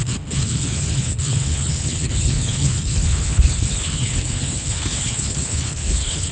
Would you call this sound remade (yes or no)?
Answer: yes